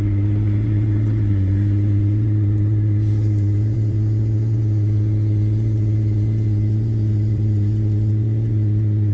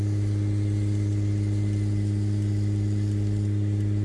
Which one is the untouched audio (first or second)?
second